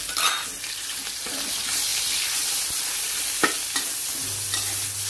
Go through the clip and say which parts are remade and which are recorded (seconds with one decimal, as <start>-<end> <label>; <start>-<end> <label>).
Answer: 0.0-1.9 recorded; 1.9-3.7 remade; 3.7-5.1 recorded